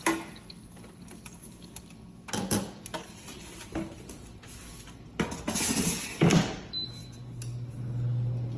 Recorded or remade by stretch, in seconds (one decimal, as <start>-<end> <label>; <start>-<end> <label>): 0.0-8.6 recorded